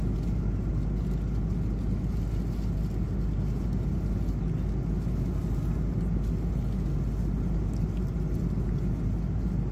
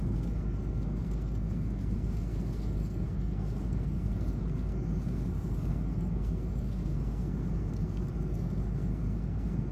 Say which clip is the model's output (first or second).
second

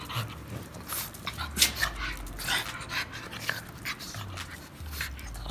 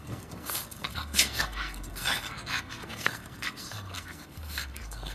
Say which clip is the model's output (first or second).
second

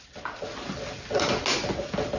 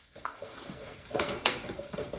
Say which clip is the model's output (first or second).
second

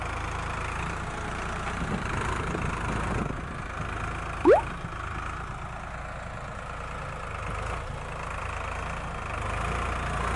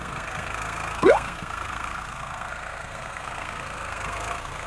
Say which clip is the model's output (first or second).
second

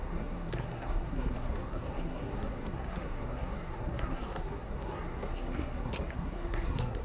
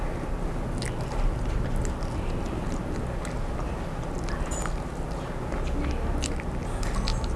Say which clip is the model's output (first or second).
first